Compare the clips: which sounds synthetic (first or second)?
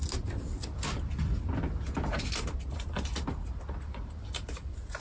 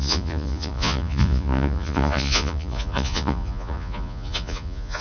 second